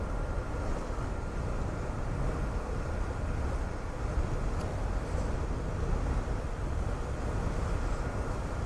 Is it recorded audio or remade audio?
recorded